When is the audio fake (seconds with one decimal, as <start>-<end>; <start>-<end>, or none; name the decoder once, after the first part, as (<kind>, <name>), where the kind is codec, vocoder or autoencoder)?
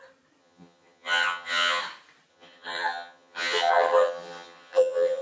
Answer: 0.4-1.8 (vocoder, HiFi-GAN); 2.3-5.2